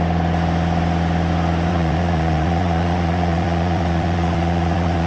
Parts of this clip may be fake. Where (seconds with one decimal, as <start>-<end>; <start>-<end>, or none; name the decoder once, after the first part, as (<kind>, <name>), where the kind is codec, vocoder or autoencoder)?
1.7-5.1 (vocoder, Vocos)